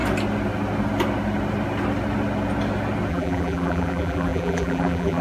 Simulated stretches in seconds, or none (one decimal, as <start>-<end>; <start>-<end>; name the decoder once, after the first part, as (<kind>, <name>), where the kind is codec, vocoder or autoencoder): 3.1-5.2 (vocoder, BigVGAN v2)